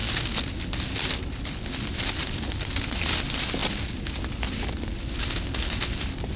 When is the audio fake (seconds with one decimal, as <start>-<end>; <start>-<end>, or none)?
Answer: none